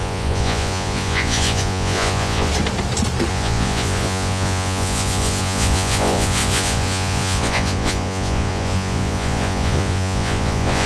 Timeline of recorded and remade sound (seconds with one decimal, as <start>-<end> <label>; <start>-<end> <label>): 0.0-2.5 remade; 2.5-3.3 recorded; 3.3-10.9 remade